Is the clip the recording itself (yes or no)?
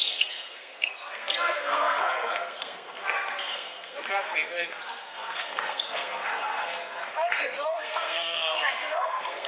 no